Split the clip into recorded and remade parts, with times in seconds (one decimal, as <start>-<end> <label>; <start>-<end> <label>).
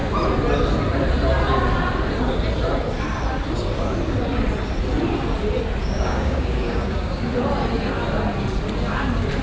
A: 0.0-5.8 recorded; 5.8-7.2 remade; 7.2-9.4 recorded